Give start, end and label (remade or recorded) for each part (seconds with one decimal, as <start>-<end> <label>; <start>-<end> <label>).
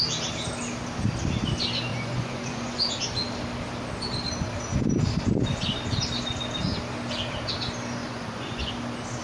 0.0-1.9 recorded; 1.9-2.9 remade; 2.9-8.0 recorded; 8.0-8.7 remade; 8.7-9.2 recorded